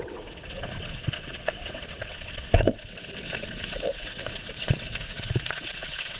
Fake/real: fake